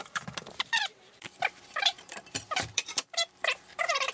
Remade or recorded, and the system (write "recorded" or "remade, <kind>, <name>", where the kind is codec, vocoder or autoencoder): remade, vocoder, BigVGAN v2